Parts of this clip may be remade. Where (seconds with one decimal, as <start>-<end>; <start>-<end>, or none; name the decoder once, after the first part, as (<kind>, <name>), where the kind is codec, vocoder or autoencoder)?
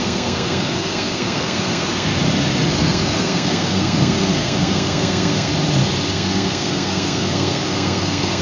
0.0-2.1 (codec, SNAC); 2.7-5.5; 6.1-8.4